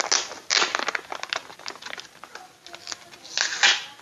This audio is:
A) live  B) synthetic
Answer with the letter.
A